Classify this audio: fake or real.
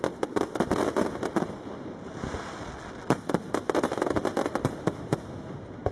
real